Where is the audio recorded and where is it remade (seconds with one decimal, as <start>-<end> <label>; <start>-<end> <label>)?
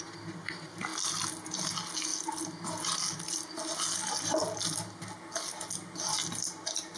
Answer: 0.0-7.0 recorded